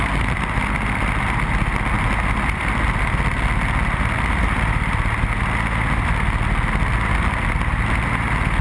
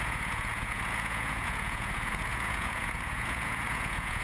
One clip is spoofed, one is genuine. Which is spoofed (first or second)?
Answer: second